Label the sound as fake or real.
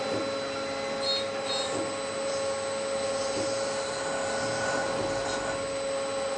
real